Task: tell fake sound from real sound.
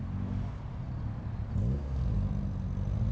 real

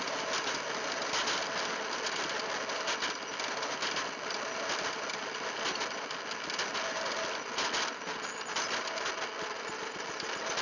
real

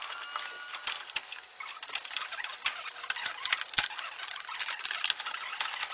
real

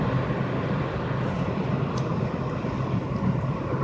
real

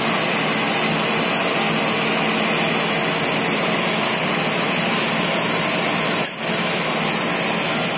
real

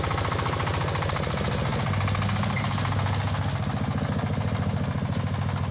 real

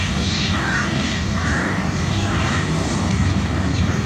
fake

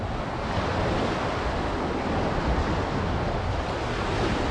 real